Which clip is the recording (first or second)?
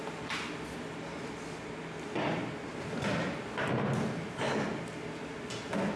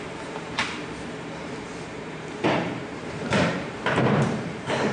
first